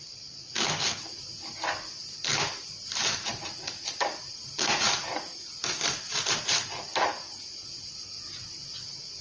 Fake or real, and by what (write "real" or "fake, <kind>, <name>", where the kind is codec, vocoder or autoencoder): real